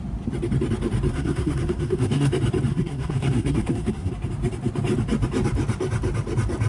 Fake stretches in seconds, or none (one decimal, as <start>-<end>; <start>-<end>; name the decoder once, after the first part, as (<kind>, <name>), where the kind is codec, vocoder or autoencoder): 1.1-2.3 (codec, SNAC); 2.7-4.1